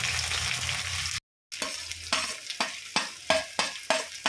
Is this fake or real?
real